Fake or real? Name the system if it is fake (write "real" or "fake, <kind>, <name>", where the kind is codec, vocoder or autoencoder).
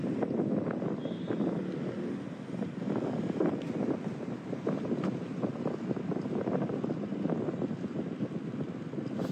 real